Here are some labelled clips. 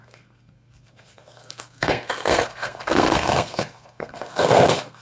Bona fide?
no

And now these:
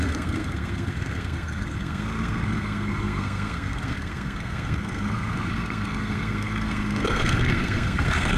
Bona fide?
no